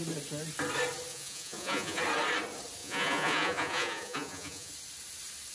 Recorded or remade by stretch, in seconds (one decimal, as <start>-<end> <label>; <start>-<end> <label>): 0.0-1.1 recorded; 1.1-2.0 remade; 2.0-2.8 recorded; 2.8-4.7 remade; 4.7-5.5 recorded

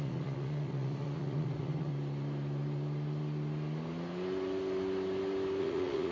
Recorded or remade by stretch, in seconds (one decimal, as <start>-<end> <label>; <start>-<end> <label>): 0.0-1.9 remade; 1.9-5.6 recorded; 5.6-6.1 remade

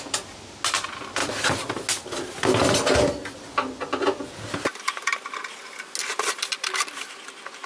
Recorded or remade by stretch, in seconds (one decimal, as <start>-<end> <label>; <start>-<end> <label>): 0.0-7.7 recorded